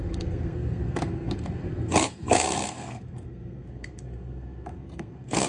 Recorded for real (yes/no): no